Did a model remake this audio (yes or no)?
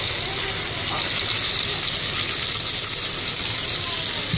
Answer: no